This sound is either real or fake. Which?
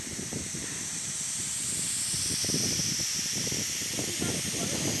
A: real